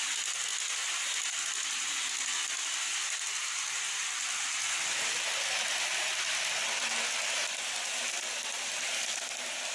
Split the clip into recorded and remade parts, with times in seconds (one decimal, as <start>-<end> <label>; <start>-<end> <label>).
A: 0.0-9.7 recorded